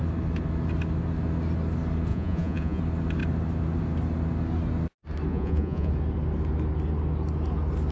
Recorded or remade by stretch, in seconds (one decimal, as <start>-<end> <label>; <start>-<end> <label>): 0.0-2.1 recorded; 2.1-2.8 remade; 2.8-5.3 recorded; 5.3-5.9 remade; 5.9-7.9 recorded